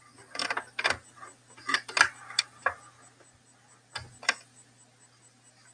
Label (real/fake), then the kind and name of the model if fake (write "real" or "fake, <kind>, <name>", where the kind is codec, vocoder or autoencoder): real